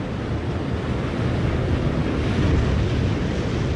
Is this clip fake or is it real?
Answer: real